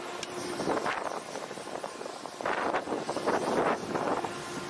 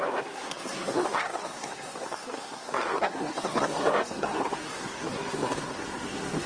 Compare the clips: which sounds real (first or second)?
first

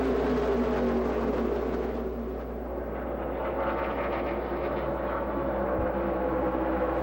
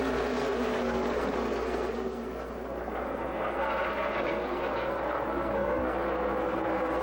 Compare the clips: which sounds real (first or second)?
first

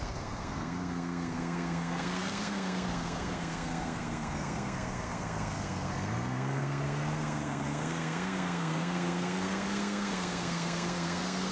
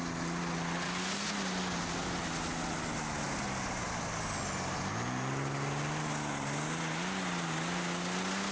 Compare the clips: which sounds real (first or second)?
second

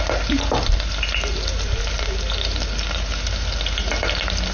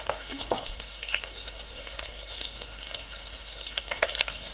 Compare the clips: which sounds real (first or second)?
first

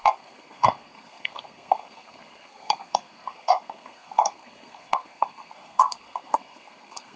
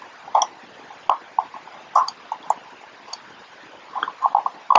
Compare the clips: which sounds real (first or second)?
second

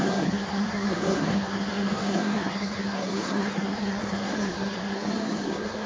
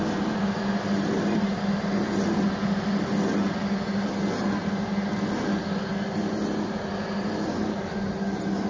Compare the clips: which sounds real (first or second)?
second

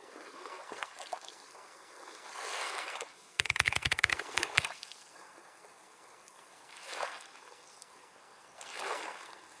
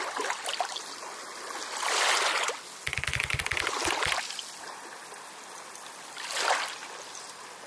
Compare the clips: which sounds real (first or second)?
second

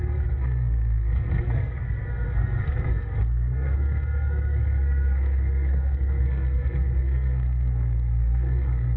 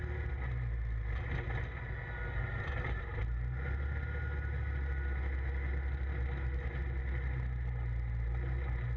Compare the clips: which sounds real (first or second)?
second